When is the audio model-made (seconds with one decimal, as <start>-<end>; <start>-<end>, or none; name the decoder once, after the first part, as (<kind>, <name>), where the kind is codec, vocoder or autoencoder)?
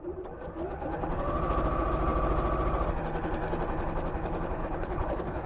4.6-5.5 (codec, HILCodec)